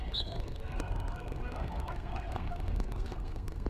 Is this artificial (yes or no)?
yes